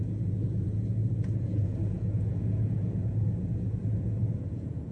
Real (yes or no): no